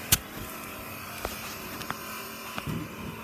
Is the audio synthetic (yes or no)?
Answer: yes